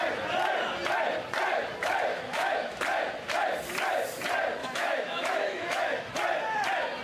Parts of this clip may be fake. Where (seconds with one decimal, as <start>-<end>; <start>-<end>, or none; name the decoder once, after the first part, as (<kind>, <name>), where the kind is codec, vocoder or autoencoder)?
2.1-2.8 (autoencoder, DAC-VAE); 4.6-6.1